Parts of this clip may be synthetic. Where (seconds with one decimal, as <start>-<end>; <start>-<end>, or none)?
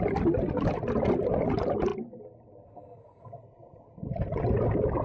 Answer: none